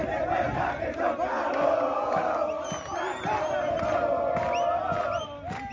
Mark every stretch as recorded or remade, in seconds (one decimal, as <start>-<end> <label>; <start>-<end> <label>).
0.0-1.1 remade; 1.1-5.7 recorded